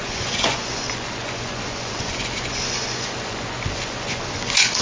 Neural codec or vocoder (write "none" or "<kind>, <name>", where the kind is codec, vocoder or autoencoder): vocoder, Vocos